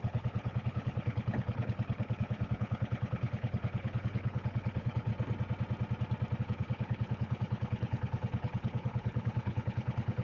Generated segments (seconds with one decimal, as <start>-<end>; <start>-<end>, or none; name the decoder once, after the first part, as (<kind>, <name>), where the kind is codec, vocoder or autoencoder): 0.0-5.1 (codec, HILCodec); 6.4-10.2